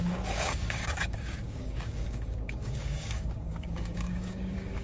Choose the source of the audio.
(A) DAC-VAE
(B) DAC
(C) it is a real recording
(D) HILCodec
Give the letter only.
B